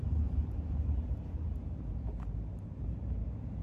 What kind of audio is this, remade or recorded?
remade